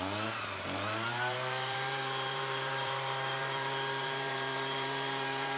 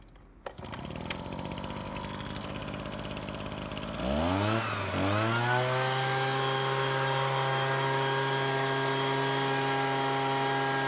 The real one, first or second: second